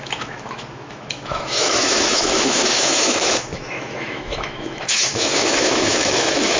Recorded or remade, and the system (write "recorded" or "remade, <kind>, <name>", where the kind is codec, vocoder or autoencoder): remade, autoencoder, DAC-VAE